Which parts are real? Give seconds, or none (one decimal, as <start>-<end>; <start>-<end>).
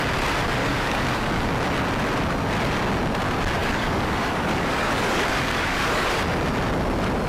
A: 0.0-0.6; 1.5-3.6; 6.2-7.3